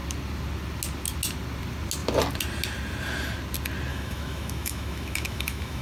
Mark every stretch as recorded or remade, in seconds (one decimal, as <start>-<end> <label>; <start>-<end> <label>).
0.0-3.9 recorded; 3.9-5.8 remade